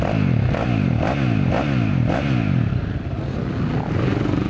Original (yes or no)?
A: yes